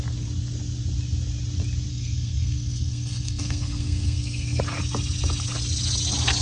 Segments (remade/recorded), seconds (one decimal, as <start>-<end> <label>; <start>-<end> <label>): 0.0-1.9 recorded; 1.9-4.6 remade; 4.6-6.4 recorded